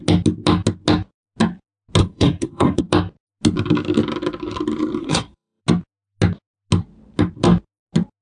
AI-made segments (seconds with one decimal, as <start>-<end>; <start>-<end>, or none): 2.0-2.8; 5.0-5.6